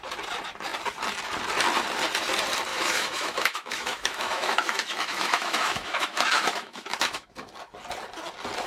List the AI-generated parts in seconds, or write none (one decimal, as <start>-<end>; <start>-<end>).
2.7-7.5

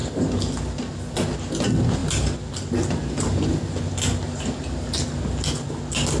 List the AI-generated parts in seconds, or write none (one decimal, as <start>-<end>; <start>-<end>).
none

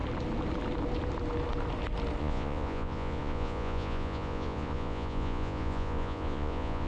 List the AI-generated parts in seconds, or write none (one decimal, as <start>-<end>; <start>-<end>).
2.2-6.9

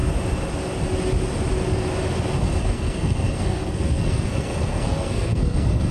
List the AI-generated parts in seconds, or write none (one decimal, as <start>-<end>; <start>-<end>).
2.6-5.9

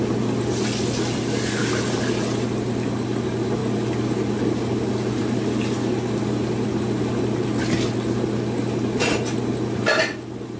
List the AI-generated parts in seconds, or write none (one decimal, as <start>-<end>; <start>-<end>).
none

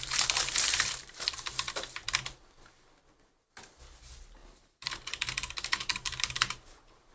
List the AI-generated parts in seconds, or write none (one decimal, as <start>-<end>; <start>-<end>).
4.4-4.9; 5.9-7.1

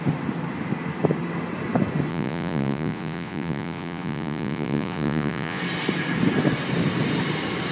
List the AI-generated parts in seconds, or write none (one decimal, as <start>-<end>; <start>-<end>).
2.1-5.6